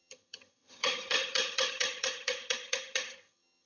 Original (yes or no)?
no